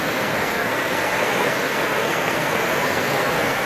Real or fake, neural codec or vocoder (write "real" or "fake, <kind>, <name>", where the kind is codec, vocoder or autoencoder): fake, codec, SNAC